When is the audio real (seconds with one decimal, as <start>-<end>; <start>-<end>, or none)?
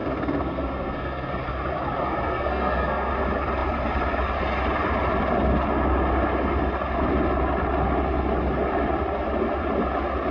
1.4-2.0; 3.1-10.3